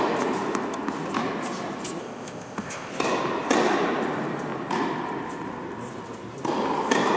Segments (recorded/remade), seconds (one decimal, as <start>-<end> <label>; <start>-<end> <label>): 0.0-2.0 recorded; 2.0-2.9 remade; 2.9-7.2 recorded